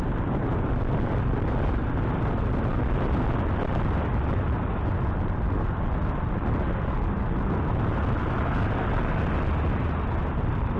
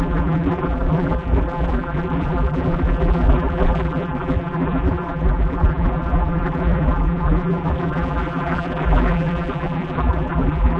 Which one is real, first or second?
first